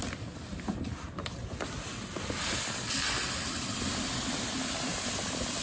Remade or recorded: recorded